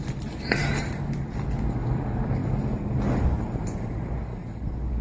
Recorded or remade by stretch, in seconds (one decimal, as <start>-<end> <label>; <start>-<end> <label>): 0.0-5.0 recorded